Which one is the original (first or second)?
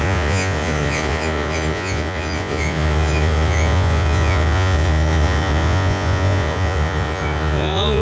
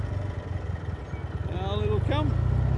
second